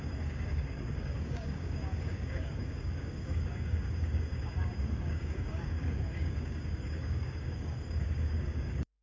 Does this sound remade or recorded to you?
remade